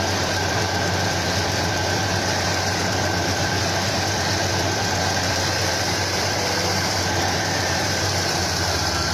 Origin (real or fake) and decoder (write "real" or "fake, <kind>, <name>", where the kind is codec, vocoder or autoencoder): fake, vocoder, BigVGAN v2